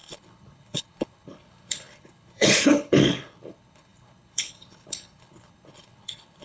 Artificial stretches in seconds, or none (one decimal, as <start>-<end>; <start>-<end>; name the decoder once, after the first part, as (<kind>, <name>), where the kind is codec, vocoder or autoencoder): 0.0-6.4 (codec, HILCodec)